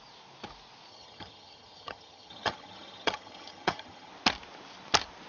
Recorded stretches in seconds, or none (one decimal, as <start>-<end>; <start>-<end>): 0.0-0.9; 4.1-5.3